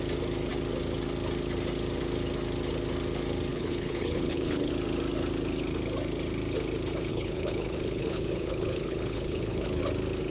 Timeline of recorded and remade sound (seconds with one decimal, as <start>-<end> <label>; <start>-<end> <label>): 0.0-3.5 recorded; 3.5-4.7 remade; 4.7-7.1 recorded; 7.1-9.8 remade; 9.8-10.3 recorded